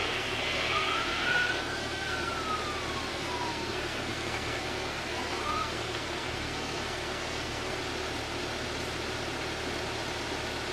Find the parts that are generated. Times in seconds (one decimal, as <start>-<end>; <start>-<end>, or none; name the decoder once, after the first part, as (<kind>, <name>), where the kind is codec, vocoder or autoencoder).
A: 0.0-2.3 (codec, SNAC); 3.1-7.8